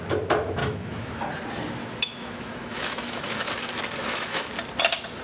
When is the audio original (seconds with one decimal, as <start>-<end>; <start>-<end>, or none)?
0.0-0.6; 1.1-1.8; 3.5-4.0; 4.5-5.2